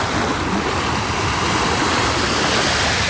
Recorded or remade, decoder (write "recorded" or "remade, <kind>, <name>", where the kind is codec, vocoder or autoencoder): recorded